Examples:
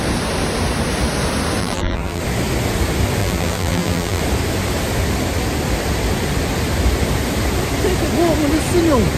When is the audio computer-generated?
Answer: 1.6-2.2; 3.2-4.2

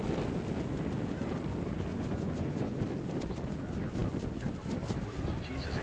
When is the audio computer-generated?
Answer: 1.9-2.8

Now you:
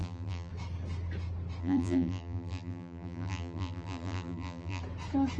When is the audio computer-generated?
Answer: 0.0-0.5; 1.6-4.8

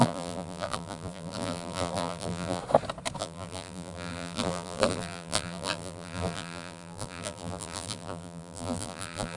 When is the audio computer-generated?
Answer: 0.0-2.6; 3.2-9.4

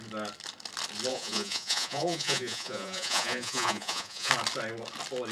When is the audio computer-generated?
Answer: 1.1-4.3